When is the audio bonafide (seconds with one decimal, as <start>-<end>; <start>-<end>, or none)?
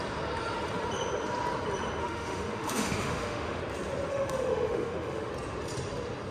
0.0-2.0; 3.6-4.1; 5.3-6.3